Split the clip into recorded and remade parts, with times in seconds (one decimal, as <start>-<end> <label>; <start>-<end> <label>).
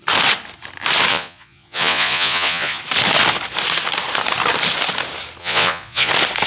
0.0-1.1 recorded; 1.1-2.8 remade; 2.8-5.4 recorded; 5.4-6.1 remade; 6.1-6.5 recorded